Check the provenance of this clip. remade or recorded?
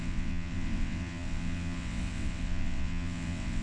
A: remade